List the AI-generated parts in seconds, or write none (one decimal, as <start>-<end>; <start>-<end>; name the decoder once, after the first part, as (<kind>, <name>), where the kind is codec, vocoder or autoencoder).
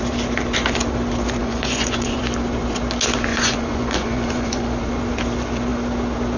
1.4-2.2 (vocoder, Vocos); 3.3-4.8